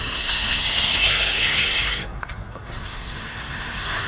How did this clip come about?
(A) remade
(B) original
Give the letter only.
A